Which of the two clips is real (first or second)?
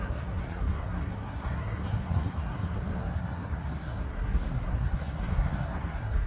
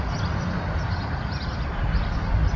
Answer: second